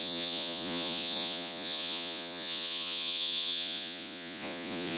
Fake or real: fake